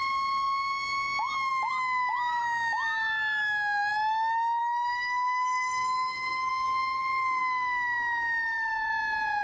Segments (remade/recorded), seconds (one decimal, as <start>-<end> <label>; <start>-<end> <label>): 0.0-4.6 recorded; 4.6-6.5 remade; 6.5-7.4 recorded; 7.4-8.9 remade; 8.9-9.4 recorded